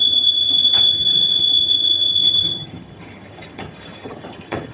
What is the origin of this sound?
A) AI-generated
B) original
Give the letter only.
A